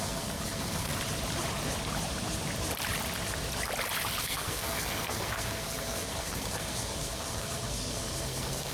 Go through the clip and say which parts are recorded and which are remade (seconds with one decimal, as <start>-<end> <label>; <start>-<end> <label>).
0.0-0.9 remade; 0.9-4.2 recorded; 4.2-8.7 remade